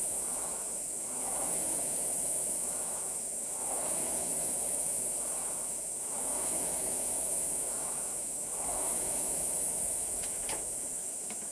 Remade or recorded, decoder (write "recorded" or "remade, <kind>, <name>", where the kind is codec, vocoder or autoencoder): remade, autoencoder, DAC-VAE